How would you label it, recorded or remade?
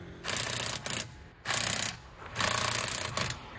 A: recorded